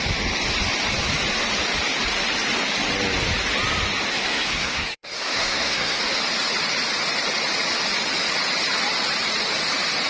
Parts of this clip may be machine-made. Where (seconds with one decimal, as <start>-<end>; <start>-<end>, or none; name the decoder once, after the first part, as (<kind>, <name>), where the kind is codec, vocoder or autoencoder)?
4.1-6.0 (codec, SNAC)

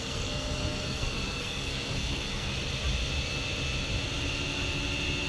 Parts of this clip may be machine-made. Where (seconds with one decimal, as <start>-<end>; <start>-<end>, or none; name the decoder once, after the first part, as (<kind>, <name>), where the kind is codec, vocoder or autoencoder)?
0.0-2.5 (codec, SNAC)

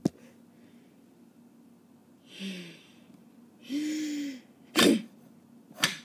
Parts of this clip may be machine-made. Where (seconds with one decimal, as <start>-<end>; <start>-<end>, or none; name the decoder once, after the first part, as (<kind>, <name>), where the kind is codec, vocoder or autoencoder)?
none

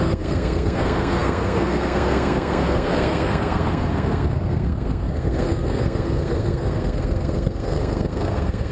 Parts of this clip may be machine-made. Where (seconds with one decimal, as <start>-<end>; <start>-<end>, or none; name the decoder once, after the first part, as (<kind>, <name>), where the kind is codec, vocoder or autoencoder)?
0.0-8.7 (codec, SNAC)

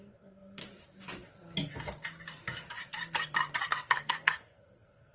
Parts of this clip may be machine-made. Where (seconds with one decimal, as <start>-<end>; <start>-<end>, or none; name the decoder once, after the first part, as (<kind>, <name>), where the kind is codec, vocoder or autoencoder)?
0.0-0.6 (codec, SNAC); 3.7-5.1

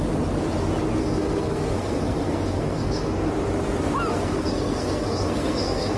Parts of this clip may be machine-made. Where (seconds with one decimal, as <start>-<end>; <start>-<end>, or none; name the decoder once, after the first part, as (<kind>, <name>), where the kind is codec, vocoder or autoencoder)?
1.0-3.3 (codec, SNAC); 4.1-6.0

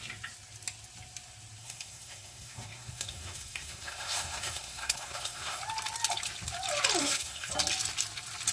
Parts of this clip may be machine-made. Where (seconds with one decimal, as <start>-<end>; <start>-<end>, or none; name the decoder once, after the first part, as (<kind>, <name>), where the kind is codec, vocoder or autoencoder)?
1.6-5.6 (codec, SNAC); 7.0-7.5